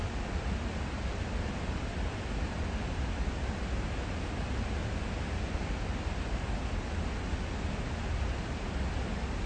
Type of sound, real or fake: real